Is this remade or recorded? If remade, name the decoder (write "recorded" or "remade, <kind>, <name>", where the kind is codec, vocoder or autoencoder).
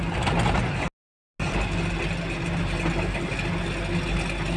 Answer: recorded